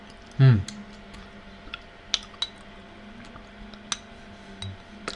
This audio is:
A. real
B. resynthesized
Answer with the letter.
A